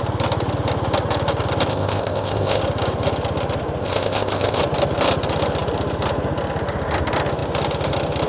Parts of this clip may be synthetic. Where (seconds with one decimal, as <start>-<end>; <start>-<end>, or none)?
1.7-2.6; 3.8-4.6